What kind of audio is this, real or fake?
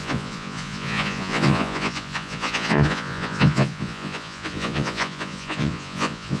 fake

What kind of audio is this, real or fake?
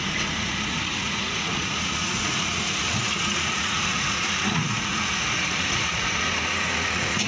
fake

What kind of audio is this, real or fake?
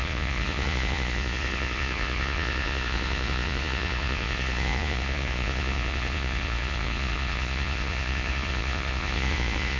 fake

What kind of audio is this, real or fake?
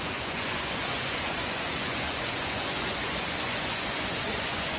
fake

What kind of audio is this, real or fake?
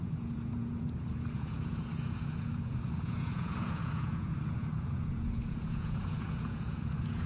fake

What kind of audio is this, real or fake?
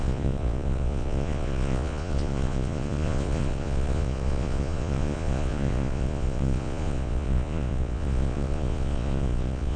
fake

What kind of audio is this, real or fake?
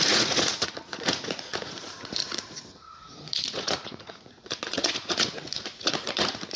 fake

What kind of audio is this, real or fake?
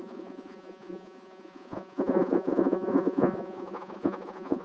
fake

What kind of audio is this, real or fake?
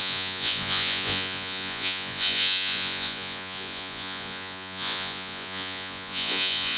fake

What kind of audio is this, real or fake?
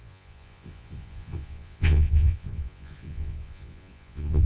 fake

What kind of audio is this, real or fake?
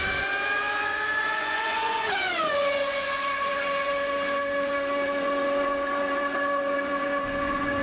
fake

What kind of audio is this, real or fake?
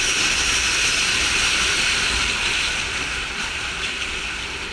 real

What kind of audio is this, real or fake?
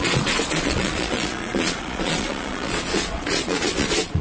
fake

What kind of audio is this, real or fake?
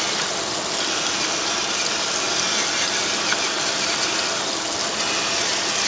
real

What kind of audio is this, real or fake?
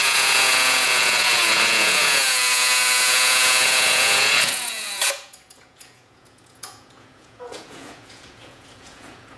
fake